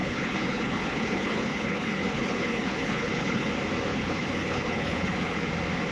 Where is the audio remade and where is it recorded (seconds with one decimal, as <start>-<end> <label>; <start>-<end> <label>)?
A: 0.0-3.5 remade; 3.5-3.9 recorded; 3.9-5.5 remade; 5.5-5.9 recorded